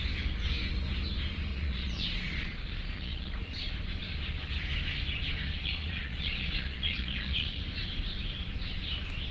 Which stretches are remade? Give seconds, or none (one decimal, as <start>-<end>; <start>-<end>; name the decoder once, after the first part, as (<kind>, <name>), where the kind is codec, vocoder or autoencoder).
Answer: 1.5-3.7 (vocoder, Vocos); 5.6-7.6